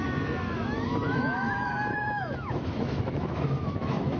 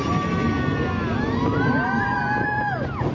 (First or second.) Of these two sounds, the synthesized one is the first